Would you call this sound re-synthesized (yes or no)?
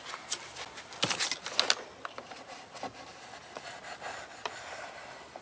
no